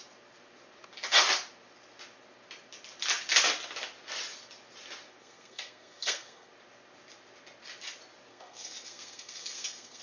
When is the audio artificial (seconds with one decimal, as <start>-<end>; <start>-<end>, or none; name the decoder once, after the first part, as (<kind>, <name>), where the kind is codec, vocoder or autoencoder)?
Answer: 5.2-6.5 (codec, SNAC); 8.3-10.0